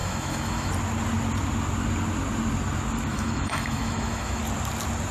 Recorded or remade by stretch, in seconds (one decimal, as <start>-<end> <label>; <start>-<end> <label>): 0.0-0.7 remade; 0.7-3.1 recorded; 3.1-4.4 remade; 4.4-5.1 recorded